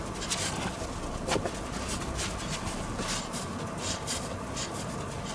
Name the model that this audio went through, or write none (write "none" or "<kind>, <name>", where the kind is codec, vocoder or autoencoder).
none